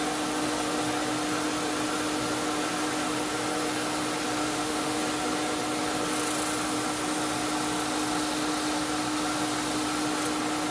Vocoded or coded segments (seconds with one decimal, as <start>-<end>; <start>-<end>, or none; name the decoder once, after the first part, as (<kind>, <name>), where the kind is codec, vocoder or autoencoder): 4.4-5.0 (autoencoder, DAC-VAE)